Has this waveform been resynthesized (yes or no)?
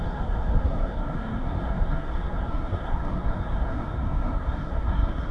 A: yes